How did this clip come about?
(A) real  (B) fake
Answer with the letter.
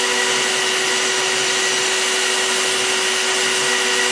A